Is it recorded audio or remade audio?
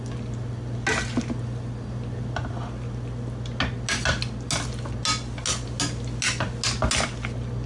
recorded